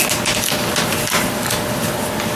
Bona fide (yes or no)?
yes